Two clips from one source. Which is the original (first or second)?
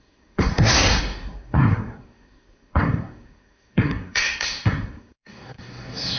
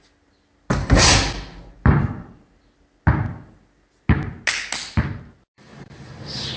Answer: second